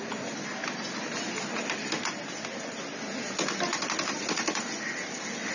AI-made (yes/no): no